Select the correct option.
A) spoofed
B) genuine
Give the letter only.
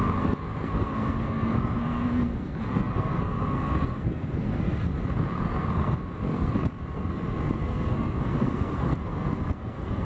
A